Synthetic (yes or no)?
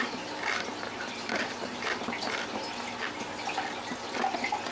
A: no